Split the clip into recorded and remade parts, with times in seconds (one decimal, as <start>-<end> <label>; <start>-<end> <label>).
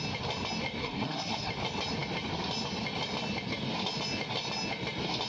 0.0-0.8 recorded; 0.8-1.5 remade; 1.5-5.3 recorded